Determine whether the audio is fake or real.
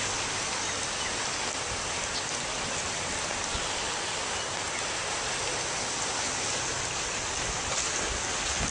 real